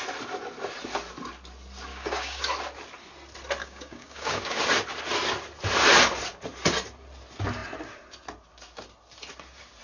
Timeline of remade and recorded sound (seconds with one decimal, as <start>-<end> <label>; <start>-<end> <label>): 0.0-1.9 recorded; 1.9-2.4 remade; 2.4-3.6 recorded; 3.6-4.6 remade; 4.6-9.8 recorded